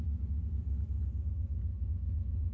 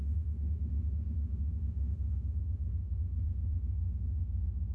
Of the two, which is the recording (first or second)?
first